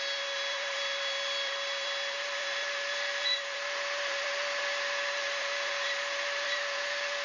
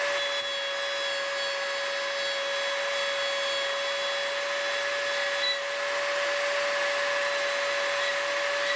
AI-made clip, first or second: first